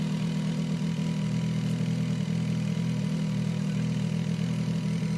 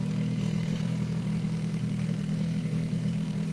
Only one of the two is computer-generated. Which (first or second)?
second